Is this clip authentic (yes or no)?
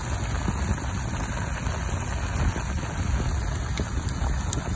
yes